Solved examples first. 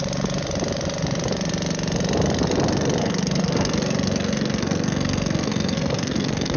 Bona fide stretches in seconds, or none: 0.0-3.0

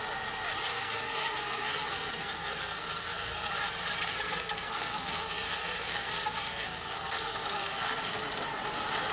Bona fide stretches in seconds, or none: 0.0-0.7; 3.5-4.1; 8.2-9.1

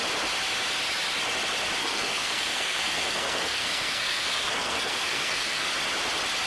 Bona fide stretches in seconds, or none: 0.0-1.8; 5.7-6.5